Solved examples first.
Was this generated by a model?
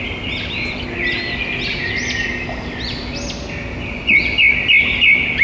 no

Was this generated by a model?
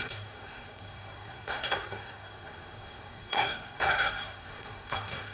yes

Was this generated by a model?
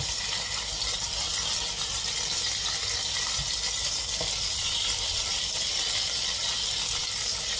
no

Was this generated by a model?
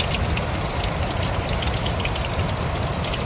no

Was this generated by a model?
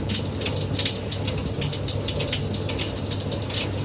no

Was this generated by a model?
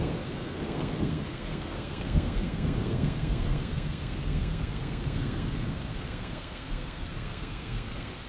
yes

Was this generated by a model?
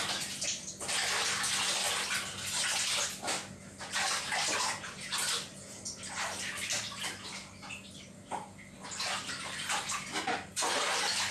no